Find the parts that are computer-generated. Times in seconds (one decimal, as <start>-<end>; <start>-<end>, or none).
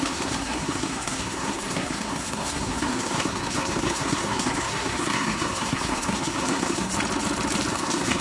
0.0-6.9; 7.7-8.2